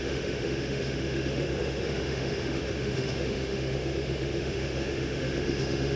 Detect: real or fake fake